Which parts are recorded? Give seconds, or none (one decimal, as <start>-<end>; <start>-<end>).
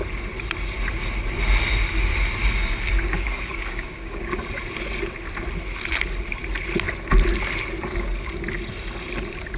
0.0-2.4; 4.4-9.6